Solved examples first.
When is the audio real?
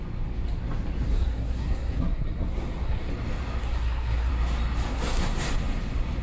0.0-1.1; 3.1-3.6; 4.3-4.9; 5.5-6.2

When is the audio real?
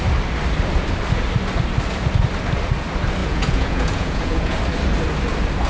0.0-3.2; 4.6-5.7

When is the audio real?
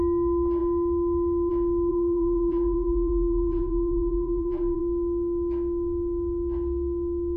0.0-1.9; 4.8-7.4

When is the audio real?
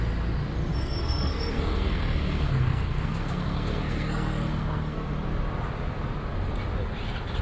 0.0-0.7; 5.1-7.4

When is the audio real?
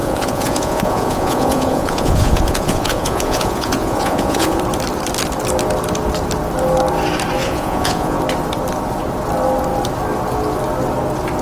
4.6-7.4; 8.2-11.4